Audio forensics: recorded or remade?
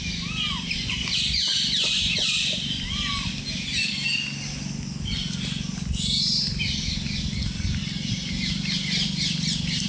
recorded